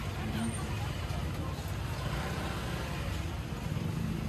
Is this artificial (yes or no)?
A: no